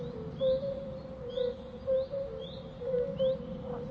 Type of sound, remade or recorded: recorded